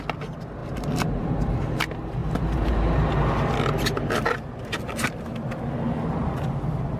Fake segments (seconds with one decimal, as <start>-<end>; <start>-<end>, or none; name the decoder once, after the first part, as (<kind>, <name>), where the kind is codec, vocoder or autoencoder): 0.6-1.8 (vocoder, BigVGAN v2); 2.2-3.1